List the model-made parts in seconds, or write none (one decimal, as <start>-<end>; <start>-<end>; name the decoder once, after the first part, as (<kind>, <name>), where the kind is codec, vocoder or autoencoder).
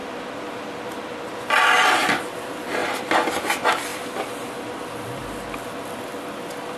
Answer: 0.0-1.2 (vocoder, BigVGAN v2); 2.8-3.3; 3.9-4.5